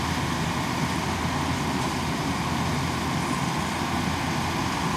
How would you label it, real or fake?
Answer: real